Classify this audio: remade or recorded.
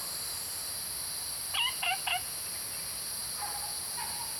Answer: recorded